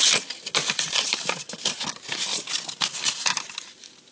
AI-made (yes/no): no